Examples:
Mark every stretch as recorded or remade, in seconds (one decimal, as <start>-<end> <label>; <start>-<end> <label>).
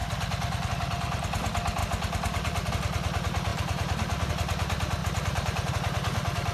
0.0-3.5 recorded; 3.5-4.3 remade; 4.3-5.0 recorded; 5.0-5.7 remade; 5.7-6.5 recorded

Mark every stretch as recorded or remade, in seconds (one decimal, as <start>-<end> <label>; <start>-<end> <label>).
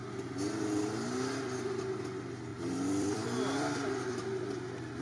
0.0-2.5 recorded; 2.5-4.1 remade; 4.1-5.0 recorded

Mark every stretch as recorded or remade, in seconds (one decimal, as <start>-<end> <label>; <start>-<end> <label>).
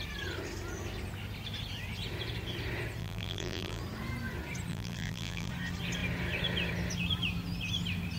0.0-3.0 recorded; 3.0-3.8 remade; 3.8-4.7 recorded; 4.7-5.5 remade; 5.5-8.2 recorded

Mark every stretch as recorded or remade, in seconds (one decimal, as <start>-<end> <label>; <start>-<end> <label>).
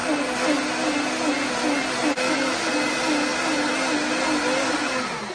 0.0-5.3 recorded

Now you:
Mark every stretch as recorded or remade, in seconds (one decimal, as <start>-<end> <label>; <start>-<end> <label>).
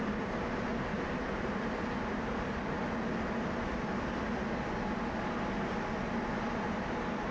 0.0-0.7 recorded; 0.7-2.6 remade; 2.6-7.3 recorded